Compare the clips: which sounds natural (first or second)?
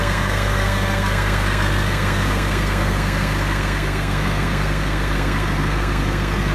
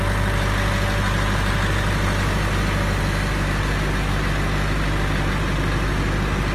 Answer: second